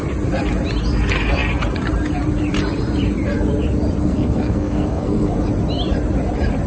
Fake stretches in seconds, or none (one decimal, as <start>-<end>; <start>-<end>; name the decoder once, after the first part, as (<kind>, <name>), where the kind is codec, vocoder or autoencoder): 4.0-5.3 (codec, SNAC)